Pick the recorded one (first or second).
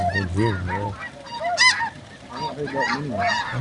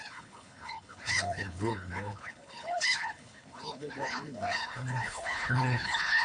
first